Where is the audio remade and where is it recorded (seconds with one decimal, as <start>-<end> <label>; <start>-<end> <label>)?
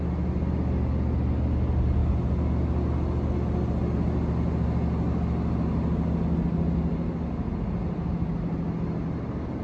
0.0-9.6 recorded